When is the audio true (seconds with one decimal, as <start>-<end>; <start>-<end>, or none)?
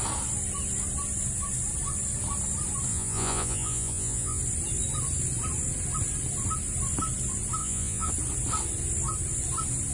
0.0-2.9; 4.4-7.6; 8.1-9.9